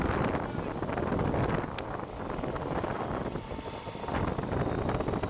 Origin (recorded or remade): recorded